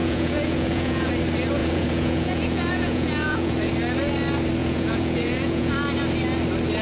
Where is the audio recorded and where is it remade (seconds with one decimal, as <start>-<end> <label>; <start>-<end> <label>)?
0.0-1.1 remade; 1.1-1.6 recorded; 1.6-3.7 remade; 3.7-4.6 recorded; 4.6-5.7 remade; 5.7-6.8 recorded